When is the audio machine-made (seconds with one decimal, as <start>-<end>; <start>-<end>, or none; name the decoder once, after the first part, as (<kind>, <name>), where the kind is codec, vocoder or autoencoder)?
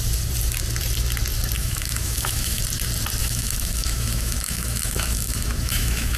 1.6-2.6 (autoencoder, DAC-VAE); 3.2-6.2